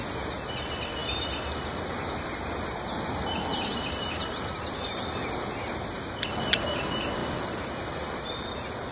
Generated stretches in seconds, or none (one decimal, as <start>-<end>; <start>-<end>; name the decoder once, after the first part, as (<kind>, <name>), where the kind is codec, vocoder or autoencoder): 3.5-4.3 (vocoder, BigVGAN v2); 7.2-8.5